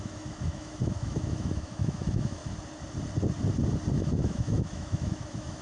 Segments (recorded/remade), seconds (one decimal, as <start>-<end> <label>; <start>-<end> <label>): 0.0-2.4 remade; 2.4-3.9 recorded; 3.9-5.6 remade